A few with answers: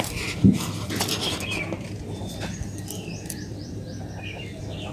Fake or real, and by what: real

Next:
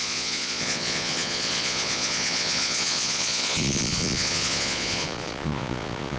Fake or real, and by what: fake, vocoder, Vocos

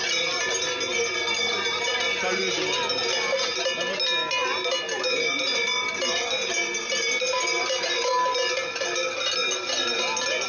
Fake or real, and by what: real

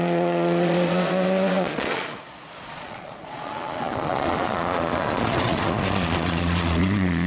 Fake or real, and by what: fake, vocoder, Vocos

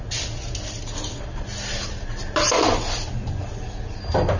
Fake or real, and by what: real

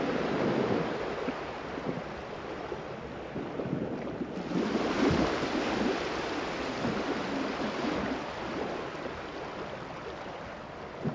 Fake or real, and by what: real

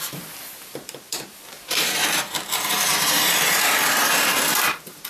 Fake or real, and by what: fake, vocoder, BigVGAN v2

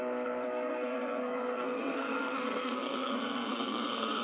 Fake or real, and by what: fake, codec, SNAC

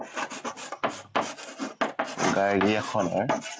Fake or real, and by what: real